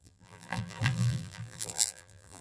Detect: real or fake fake